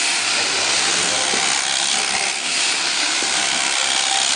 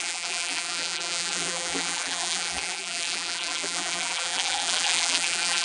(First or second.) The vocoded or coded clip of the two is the second